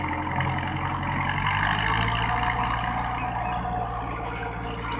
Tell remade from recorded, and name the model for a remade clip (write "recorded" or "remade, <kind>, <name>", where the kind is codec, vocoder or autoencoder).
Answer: recorded